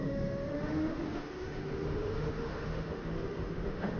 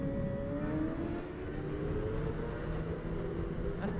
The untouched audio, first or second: second